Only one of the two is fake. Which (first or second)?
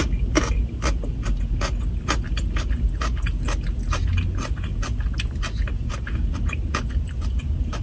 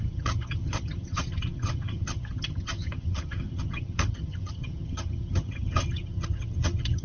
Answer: second